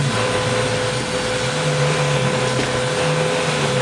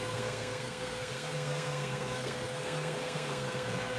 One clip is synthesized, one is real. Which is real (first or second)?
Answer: first